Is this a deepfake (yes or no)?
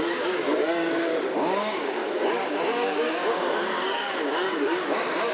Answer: yes